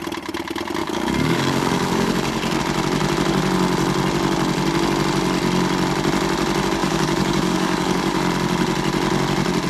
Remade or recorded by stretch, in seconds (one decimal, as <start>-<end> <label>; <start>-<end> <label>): 0.0-0.8 recorded; 0.8-2.6 remade; 2.6-6.8 recorded; 6.8-8.2 remade; 8.2-9.7 recorded